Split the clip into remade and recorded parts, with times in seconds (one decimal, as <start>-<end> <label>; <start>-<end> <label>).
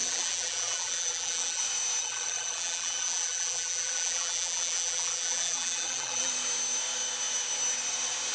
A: 0.0-1.6 remade; 1.6-2.0 recorded; 2.0-6.3 remade; 6.3-8.3 recorded